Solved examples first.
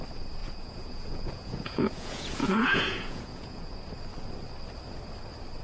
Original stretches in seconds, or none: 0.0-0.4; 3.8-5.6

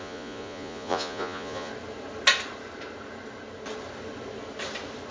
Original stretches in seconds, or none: 1.7-5.1